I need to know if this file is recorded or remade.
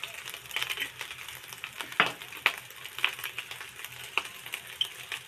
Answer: recorded